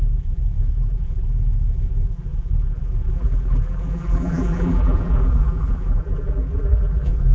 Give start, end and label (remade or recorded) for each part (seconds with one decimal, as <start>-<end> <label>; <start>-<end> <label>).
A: 0.0-7.3 remade